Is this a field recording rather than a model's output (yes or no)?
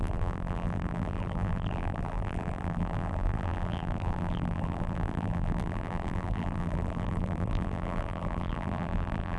no